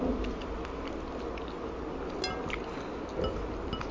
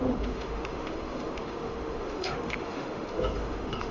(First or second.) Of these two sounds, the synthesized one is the second